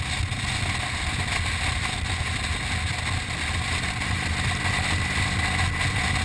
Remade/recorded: recorded